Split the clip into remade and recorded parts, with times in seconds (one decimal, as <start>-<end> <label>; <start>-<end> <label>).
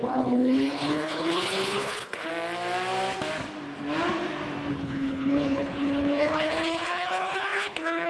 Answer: 0.0-2.3 remade; 2.3-4.7 recorded; 4.7-8.1 remade